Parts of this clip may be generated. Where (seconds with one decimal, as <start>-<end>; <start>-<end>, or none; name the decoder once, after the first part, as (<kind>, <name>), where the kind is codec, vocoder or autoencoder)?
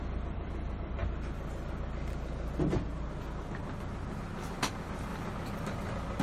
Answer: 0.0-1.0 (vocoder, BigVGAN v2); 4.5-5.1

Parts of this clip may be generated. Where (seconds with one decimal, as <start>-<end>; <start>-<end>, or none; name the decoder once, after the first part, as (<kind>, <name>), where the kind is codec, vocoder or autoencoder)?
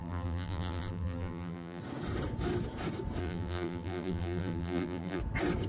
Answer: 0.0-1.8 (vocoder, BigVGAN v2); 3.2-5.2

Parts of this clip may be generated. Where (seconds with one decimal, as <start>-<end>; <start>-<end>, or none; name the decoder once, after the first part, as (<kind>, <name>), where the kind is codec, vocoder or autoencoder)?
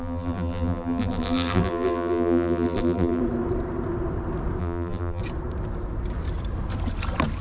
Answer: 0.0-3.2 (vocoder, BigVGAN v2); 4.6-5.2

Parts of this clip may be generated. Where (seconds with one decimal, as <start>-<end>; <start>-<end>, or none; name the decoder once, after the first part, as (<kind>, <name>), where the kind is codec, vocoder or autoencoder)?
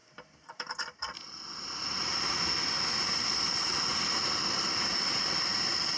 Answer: 0.0-1.0 (vocoder, BigVGAN v2); 3.9-6.0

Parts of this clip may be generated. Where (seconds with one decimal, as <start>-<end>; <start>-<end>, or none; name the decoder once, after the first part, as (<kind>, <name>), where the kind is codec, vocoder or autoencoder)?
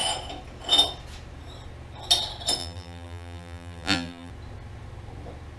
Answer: 2.6-4.3 (vocoder, BigVGAN v2)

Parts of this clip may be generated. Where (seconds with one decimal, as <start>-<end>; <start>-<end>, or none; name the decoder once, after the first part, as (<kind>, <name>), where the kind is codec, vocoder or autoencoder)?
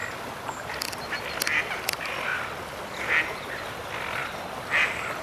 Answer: none